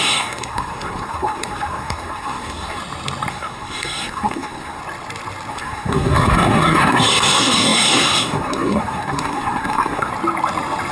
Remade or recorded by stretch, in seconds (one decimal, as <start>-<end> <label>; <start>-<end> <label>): 0.0-2.8 remade; 2.8-3.3 recorded; 3.3-4.8 remade; 4.8-5.5 recorded; 5.5-10.1 remade; 10.1-10.9 recorded